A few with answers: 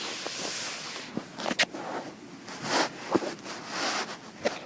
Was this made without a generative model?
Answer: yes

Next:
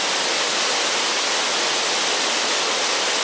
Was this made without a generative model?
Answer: yes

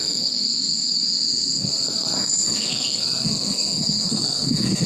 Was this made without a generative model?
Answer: no